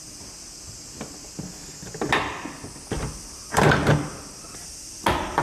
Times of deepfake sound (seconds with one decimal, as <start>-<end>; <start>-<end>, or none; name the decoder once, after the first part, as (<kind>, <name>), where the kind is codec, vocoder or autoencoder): none